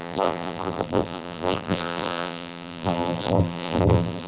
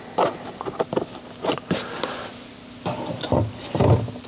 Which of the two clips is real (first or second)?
second